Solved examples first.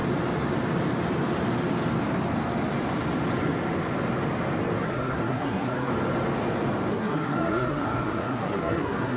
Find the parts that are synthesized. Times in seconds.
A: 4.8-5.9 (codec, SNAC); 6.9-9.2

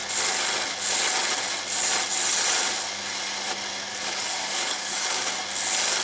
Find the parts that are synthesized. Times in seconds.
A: 3.9-5.4 (codec, DAC)

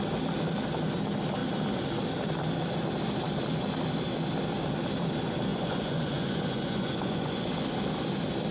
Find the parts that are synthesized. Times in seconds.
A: 5.5-7.5 (vocoder, Vocos)

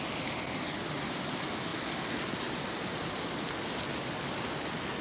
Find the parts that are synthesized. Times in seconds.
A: none

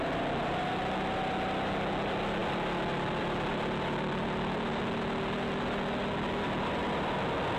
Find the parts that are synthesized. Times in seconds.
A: none

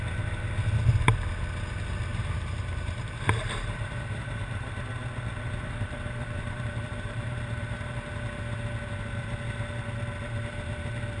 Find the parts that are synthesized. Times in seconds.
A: 2.1-4.8 (vocoder, BigVGAN v2); 5.6-8.0

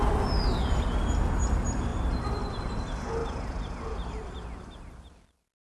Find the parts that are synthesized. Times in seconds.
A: 1.9-2.6 (vocoder, BigVGAN v2)